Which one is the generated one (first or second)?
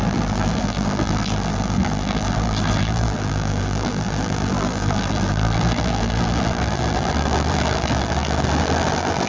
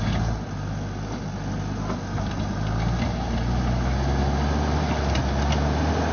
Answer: first